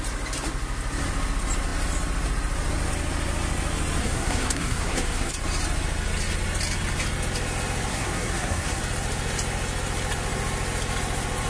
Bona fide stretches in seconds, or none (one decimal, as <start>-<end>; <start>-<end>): 0.0-4.0; 5.3-7.9; 8.8-11.5

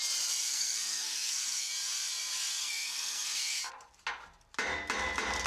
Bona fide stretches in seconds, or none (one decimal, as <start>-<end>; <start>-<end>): 0.0-0.4; 1.7-2.6; 3.6-5.5

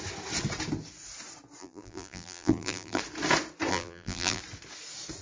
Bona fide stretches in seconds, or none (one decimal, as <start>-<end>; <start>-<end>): 0.0-1.6; 3.0-3.7; 4.4-5.2

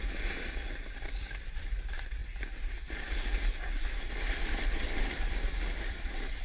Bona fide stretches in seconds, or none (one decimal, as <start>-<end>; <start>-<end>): 0.0-6.4

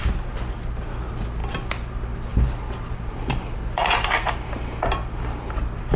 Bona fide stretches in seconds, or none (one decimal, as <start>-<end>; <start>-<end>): 0.0-6.0